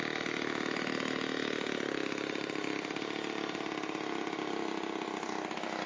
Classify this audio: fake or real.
real